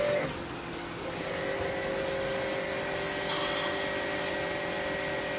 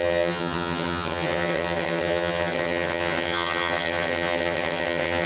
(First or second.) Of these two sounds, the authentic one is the first